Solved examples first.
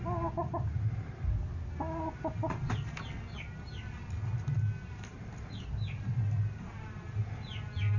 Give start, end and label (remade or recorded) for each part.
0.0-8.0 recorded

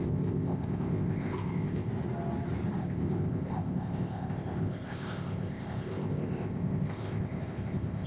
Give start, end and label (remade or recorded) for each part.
0.0-1.9 remade; 1.9-2.8 recorded; 2.8-8.1 remade

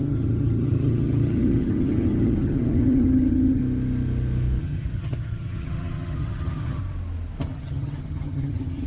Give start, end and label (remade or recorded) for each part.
0.0-3.6 remade; 3.6-4.6 recorded; 4.6-6.8 remade; 6.8-7.4 recorded; 7.4-8.9 remade